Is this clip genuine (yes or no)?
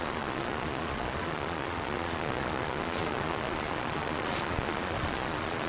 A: no